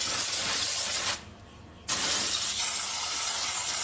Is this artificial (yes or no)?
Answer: no